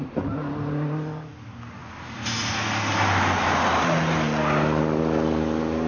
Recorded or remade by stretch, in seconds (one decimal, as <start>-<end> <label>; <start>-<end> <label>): 0.0-5.9 recorded